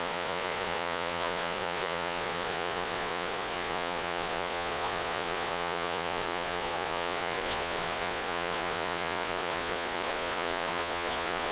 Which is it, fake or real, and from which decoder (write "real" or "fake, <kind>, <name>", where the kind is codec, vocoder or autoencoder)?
fake, vocoder, Vocos